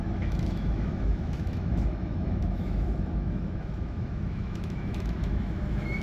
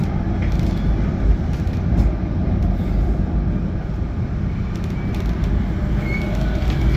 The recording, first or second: second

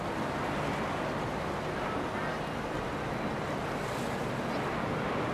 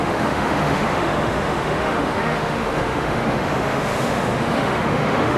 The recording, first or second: first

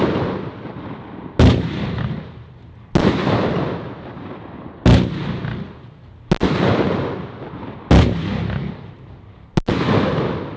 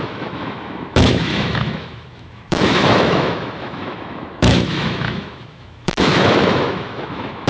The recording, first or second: first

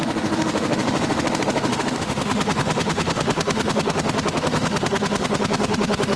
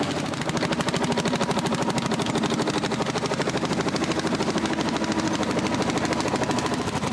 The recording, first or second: second